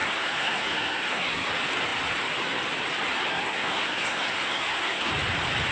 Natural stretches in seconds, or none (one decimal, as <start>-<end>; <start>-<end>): 1.5-3.3; 5.1-5.7